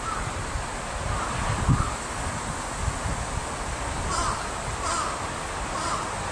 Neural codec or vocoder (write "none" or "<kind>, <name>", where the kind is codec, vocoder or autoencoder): none